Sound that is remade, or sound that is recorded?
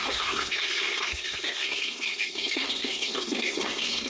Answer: remade